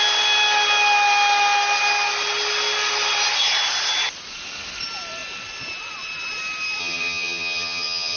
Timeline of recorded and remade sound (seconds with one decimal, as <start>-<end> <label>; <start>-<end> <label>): 0.0-6.8 recorded; 6.8-8.2 remade